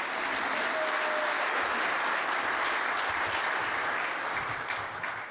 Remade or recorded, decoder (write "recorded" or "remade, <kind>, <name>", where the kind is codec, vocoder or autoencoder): recorded